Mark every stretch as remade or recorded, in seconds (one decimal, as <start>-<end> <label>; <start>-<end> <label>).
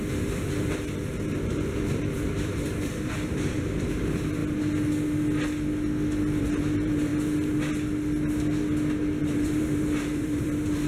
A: 0.0-4.4 remade; 4.4-6.4 recorded; 6.4-7.1 remade; 7.1-9.2 recorded; 9.2-10.9 remade